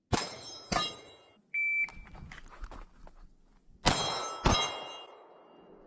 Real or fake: real